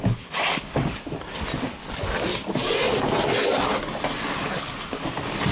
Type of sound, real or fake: real